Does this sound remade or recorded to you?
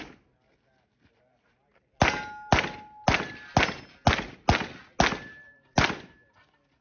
recorded